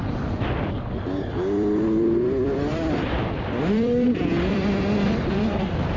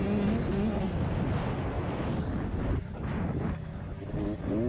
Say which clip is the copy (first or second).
first